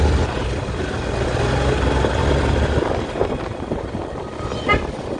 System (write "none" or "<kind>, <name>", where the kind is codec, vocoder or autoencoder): none